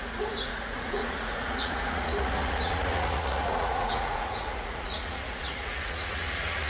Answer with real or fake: fake